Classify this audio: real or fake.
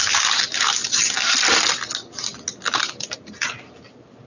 real